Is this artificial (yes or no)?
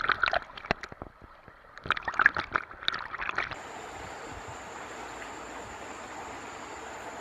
no